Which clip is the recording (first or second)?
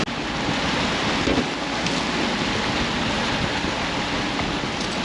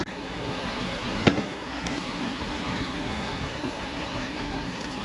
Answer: first